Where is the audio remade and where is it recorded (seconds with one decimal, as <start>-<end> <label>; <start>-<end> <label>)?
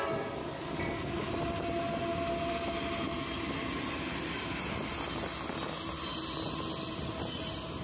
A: 0.0-0.4 recorded; 0.4-1.3 remade; 1.3-7.8 recorded